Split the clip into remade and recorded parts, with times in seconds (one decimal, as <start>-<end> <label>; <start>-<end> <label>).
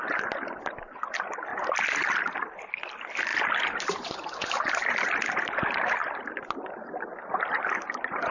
0.0-1.5 recorded; 1.5-2.7 remade; 2.7-8.3 recorded